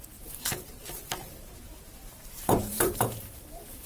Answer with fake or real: fake